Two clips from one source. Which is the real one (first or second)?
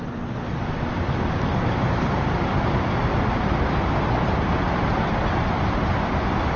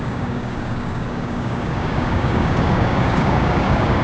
first